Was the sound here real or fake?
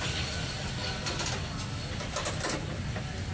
real